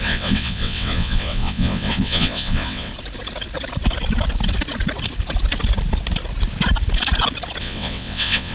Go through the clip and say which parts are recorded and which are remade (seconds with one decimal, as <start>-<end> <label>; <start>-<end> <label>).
0.0-2.9 remade; 2.9-7.6 recorded; 7.6-8.5 remade